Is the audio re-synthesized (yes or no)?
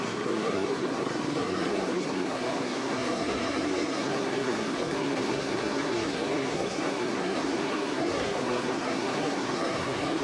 yes